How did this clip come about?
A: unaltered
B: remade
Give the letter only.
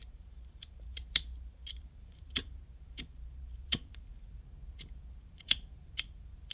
B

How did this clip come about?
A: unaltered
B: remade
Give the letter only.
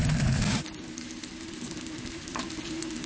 A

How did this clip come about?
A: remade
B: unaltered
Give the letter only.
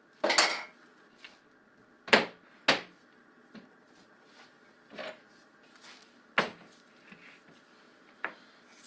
B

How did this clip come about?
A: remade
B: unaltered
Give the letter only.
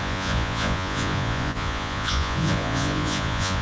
A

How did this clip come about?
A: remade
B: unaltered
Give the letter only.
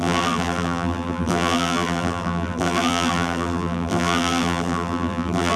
A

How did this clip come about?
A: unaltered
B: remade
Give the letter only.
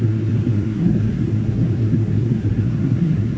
B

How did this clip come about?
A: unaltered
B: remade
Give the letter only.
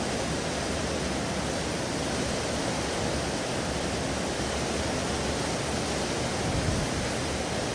A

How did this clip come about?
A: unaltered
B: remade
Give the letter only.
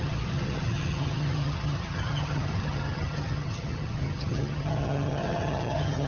B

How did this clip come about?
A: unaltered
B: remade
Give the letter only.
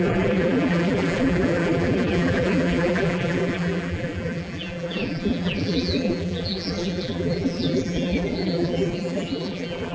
B